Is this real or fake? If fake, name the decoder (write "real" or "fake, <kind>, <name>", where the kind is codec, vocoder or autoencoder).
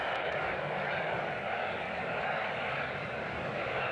fake, codec, DAC